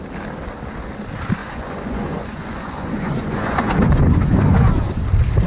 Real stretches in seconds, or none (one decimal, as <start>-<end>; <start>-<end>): 0.0-1.4; 4.7-5.5